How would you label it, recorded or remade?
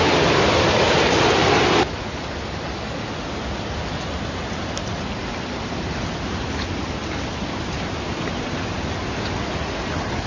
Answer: recorded